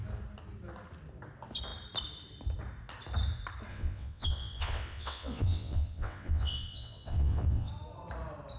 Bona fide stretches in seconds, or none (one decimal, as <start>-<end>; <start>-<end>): 0.0-3.7; 7.7-8.6